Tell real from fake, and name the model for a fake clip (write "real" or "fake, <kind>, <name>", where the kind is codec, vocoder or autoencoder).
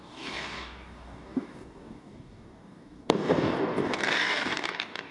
fake, codec, DAC